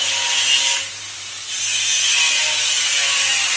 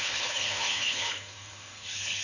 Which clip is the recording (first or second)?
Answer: first